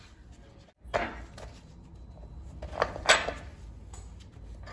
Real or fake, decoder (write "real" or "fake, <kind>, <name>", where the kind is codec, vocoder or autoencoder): real